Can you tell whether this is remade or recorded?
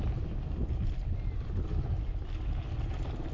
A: recorded